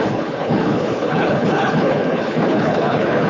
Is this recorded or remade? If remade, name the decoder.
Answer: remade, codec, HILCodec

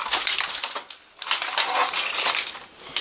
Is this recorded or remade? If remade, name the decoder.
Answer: recorded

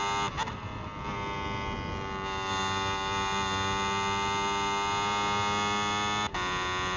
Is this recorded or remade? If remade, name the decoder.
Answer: recorded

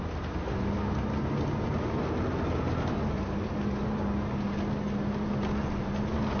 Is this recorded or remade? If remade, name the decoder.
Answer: recorded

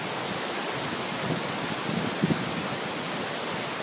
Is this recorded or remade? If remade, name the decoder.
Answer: recorded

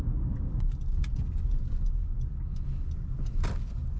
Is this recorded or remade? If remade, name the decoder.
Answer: remade, vocoder, BigVGAN v2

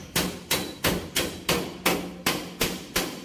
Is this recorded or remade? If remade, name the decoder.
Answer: recorded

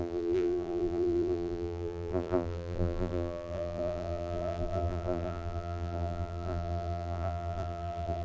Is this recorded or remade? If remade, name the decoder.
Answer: remade, vocoder, BigVGAN v2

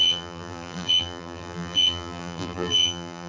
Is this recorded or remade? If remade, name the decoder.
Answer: remade, vocoder, BigVGAN v2